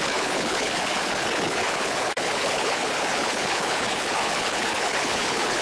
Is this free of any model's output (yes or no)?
no